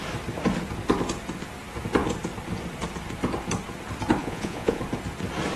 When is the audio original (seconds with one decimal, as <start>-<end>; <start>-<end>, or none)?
0.0-4.2; 4.8-5.6